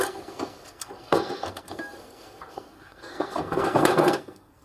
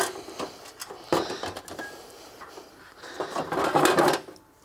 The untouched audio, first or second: second